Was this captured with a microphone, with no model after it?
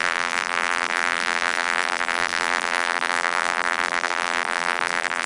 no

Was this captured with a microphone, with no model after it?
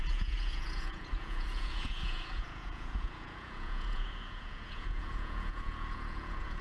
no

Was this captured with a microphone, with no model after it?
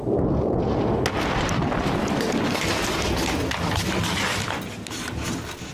yes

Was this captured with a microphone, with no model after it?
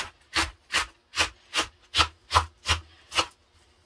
yes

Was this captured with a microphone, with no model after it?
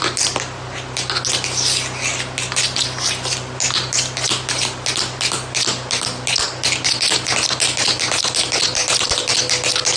yes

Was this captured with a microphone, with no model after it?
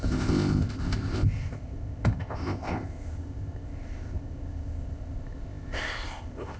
no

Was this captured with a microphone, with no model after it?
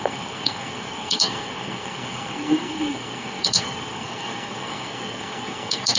no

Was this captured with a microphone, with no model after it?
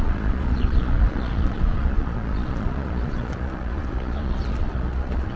no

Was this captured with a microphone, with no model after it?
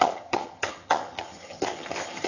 no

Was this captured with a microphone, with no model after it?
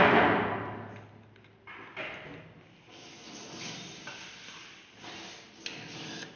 yes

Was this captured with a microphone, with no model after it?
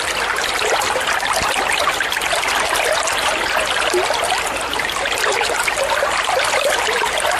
yes